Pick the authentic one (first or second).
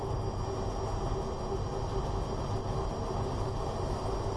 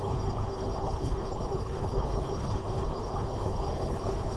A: first